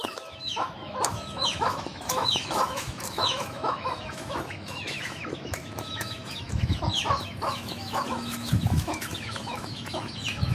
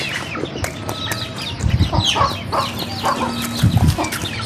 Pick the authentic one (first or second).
second